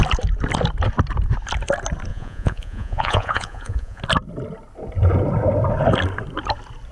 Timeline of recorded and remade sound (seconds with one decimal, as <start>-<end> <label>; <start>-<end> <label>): 0.0-2.1 recorded; 2.1-4.0 remade; 4.0-6.9 recorded